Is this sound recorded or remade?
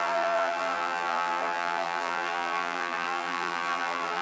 remade